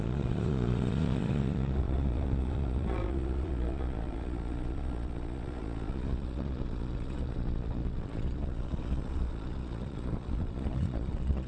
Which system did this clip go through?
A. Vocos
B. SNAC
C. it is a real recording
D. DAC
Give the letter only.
A